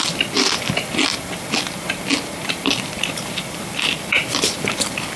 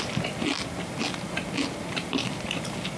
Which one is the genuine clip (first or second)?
second